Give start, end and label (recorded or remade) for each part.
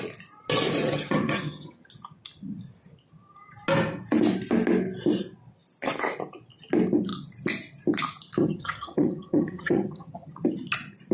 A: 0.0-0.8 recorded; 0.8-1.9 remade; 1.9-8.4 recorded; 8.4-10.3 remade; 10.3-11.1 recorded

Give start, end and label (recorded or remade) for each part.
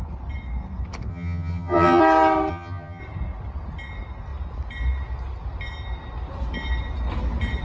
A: 0.0-1.1 recorded; 1.1-2.0 remade; 2.0-2.5 recorded; 2.5-3.0 remade; 3.0-7.6 recorded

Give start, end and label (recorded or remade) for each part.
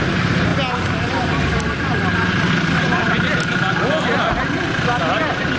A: 0.0-5.6 recorded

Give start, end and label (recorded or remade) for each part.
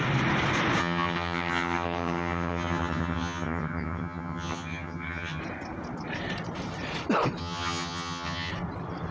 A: 0.0-0.8 recorded; 0.8-5.4 remade; 5.4-7.4 recorded; 7.4-8.5 remade; 8.5-9.1 recorded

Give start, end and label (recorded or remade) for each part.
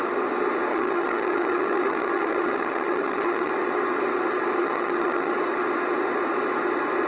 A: 0.0-0.7 recorded; 0.7-3.5 remade; 3.5-4.6 recorded; 4.6-5.3 remade; 5.3-7.1 recorded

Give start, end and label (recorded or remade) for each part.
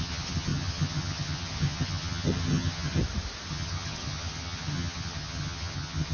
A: 0.0-3.0 remade; 3.0-3.5 recorded; 3.5-6.1 remade